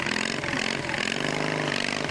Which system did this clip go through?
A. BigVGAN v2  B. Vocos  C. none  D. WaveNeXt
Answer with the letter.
C